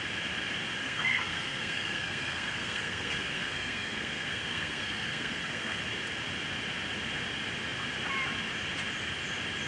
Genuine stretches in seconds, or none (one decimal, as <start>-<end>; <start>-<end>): 0.0-0.8; 5.8-9.7